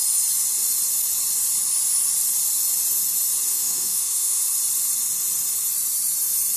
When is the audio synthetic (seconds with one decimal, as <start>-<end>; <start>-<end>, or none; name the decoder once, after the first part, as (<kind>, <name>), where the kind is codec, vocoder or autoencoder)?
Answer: 3.5-4.4 (autoencoder, DAC-VAE)